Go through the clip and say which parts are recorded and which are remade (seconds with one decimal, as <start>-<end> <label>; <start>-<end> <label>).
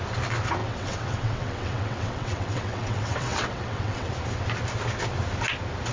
0.0-0.6 recorded; 0.6-4.1 remade; 4.1-5.9 recorded